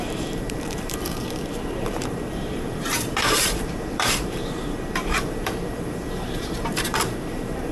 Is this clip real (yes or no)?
no